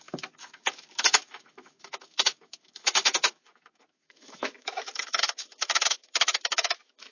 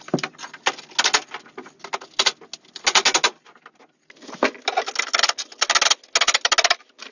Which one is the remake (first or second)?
first